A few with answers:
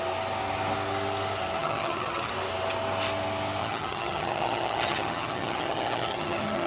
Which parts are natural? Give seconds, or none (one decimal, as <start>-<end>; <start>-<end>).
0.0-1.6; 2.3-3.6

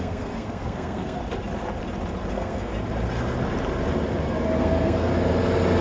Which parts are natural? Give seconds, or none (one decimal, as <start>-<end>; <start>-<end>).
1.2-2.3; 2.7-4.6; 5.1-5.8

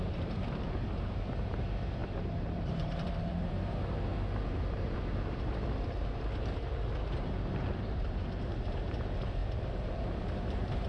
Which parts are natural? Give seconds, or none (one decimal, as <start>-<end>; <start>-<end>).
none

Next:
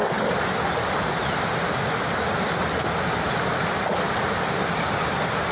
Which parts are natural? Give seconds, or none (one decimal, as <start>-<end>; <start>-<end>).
0.0-5.5